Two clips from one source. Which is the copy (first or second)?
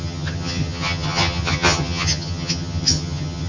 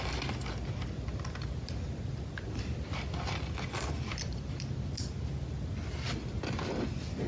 first